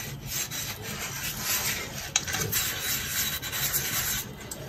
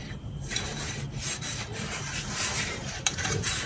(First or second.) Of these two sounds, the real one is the first